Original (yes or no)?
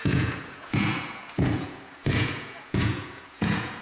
no